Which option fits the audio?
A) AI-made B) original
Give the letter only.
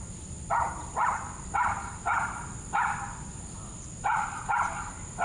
B